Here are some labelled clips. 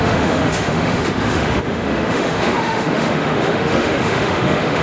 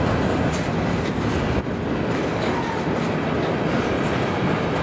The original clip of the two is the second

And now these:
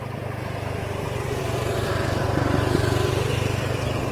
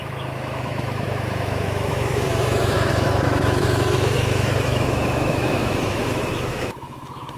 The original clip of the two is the first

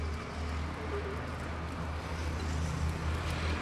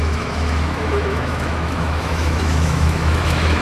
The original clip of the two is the first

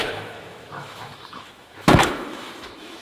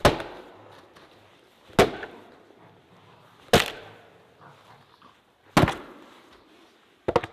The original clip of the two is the second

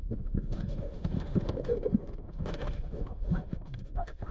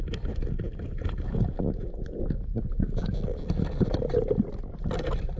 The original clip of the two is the second